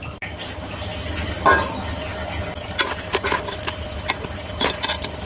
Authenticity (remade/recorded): recorded